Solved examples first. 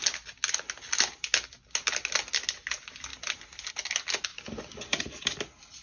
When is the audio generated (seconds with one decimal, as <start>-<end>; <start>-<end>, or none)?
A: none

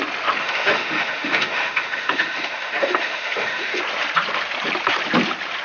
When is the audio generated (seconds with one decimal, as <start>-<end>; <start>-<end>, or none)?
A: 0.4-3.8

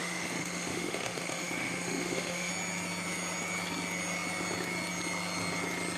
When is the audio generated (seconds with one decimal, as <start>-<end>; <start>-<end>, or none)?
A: 0.0-2.5